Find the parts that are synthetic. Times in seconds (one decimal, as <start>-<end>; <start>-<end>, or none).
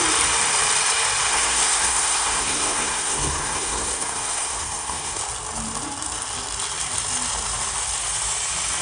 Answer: 1.3-5.2